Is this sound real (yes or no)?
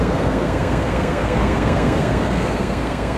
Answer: no